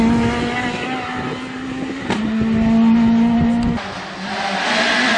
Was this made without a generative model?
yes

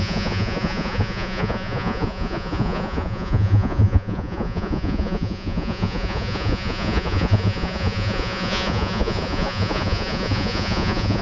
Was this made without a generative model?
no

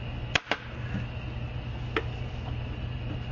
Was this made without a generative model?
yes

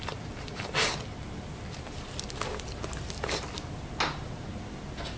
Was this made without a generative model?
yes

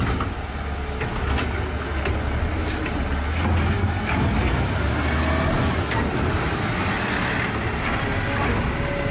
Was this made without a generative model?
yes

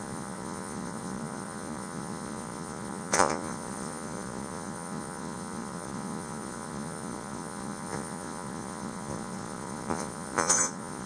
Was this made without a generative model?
no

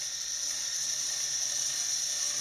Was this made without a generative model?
yes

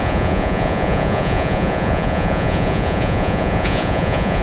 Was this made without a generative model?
no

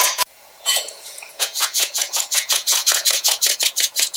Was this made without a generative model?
no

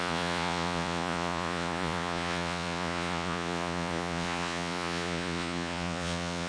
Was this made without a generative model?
no